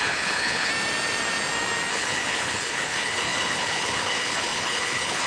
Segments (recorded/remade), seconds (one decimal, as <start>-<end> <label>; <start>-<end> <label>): 0.0-0.7 remade; 0.7-1.9 recorded; 1.9-5.3 remade